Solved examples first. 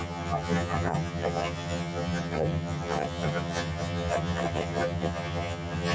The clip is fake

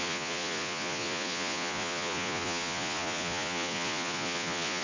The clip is fake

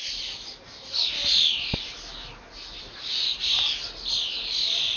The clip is real